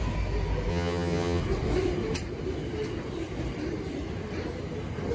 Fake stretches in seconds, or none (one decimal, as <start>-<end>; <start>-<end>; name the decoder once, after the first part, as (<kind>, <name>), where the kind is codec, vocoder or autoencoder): 0.7-1.4 (vocoder, HiFi-GAN)